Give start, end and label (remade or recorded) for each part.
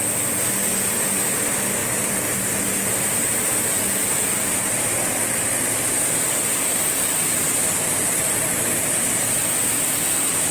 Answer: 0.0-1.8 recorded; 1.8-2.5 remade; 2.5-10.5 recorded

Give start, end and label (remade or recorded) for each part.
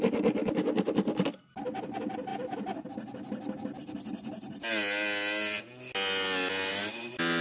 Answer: 0.0-7.4 recorded